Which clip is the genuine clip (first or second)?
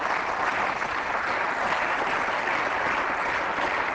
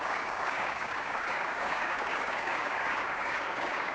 first